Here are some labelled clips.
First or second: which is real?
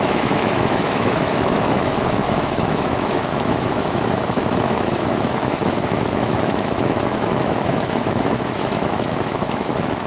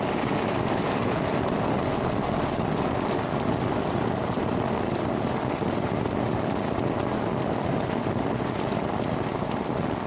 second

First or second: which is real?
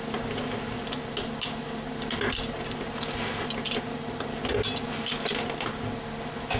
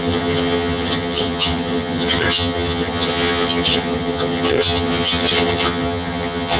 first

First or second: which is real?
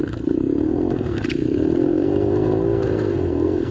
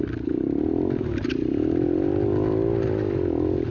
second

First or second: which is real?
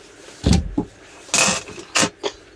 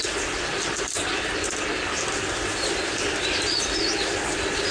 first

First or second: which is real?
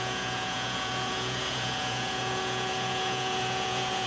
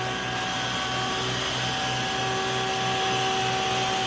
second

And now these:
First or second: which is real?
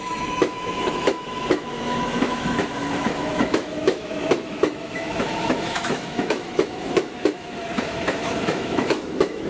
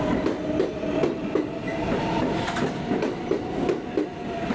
second